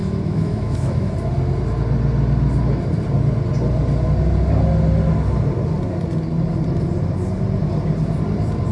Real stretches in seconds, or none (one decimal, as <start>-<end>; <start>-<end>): 1.1-8.7